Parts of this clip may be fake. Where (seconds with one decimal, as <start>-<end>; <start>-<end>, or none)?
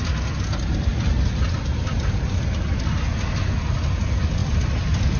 none